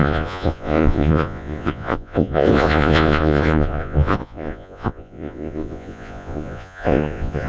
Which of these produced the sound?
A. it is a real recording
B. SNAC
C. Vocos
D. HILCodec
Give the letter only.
C